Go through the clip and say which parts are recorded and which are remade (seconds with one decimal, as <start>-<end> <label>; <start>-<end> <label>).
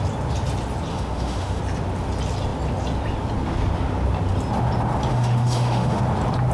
0.0-0.9 recorded; 0.9-1.6 remade; 1.6-5.1 recorded; 5.1-6.0 remade; 6.0-6.5 recorded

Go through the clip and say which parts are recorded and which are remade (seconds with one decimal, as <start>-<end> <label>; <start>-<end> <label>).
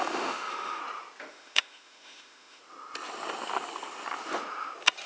0.0-0.8 remade; 0.8-1.3 recorded; 1.3-2.6 remade; 2.6-5.1 recorded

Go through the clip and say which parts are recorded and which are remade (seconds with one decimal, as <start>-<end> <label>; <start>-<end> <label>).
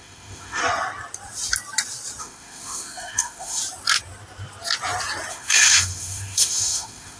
0.0-0.6 remade; 0.6-2.2 recorded; 2.2-3.6 remade; 3.6-5.3 recorded; 5.3-7.2 remade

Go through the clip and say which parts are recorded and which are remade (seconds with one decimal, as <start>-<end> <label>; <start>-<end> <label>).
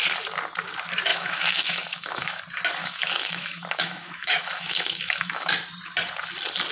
0.0-1.1 recorded; 1.1-2.4 remade; 2.4-2.8 recorded; 2.8-5.5 remade; 5.5-6.7 recorded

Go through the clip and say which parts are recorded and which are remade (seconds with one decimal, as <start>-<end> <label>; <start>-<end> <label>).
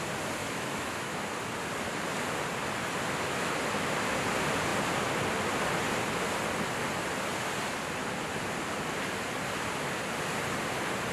0.0-0.4 recorded; 0.4-1.1 remade; 1.1-11.1 recorded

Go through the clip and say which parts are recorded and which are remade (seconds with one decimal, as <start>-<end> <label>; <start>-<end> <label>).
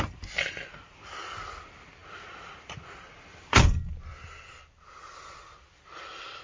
0.0-6.4 recorded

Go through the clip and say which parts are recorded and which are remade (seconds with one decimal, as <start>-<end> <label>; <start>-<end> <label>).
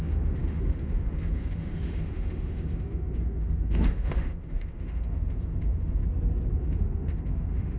0.0-6.0 remade; 6.0-6.5 recorded; 6.5-7.8 remade